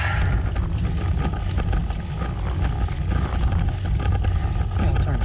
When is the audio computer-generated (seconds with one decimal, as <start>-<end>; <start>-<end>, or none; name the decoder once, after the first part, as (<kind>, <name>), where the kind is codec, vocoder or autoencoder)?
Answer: none